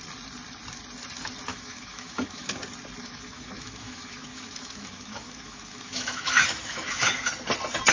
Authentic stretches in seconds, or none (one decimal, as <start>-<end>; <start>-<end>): 0.0-1.5; 2.6-3.0; 7.3-7.9